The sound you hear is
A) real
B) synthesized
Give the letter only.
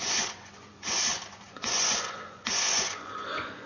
B